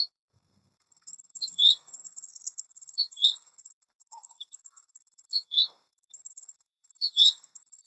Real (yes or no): no